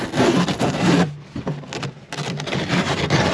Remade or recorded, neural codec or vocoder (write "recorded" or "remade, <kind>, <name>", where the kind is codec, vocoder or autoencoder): recorded